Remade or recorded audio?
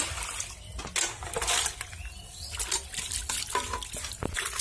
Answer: recorded